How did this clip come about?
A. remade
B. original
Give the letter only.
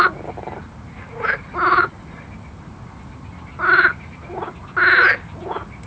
B